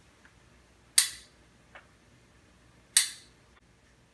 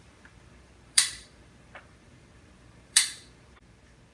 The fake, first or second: second